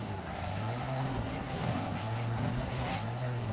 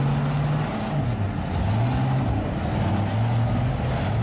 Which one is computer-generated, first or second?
first